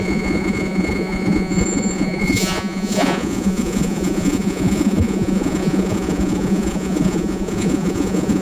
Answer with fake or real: fake